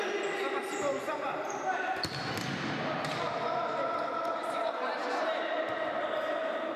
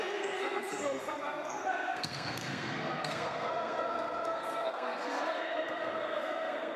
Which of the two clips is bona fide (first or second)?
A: first